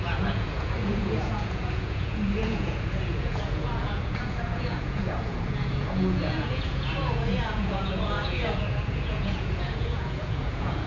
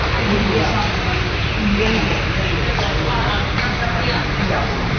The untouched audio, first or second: second